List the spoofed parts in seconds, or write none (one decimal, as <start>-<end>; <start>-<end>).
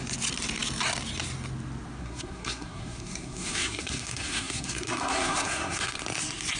2.0-6.0